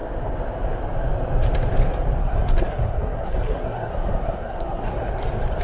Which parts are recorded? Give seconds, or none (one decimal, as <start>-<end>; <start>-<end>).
0.0-2.2; 5.1-5.6